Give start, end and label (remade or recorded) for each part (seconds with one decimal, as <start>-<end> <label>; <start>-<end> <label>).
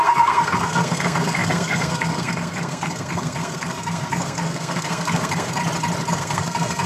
0.0-5.6 remade; 5.6-6.1 recorded; 6.1-6.9 remade